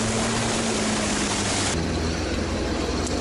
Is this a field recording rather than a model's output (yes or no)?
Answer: yes